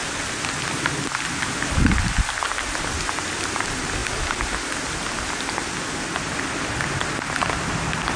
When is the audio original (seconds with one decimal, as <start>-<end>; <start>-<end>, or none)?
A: 0.0-8.2